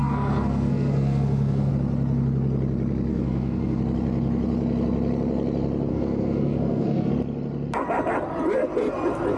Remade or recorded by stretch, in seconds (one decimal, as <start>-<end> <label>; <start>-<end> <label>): 0.0-1.7 remade; 1.7-3.1 recorded; 3.1-3.8 remade; 3.8-5.9 recorded; 5.9-7.1 remade; 7.1-9.4 recorded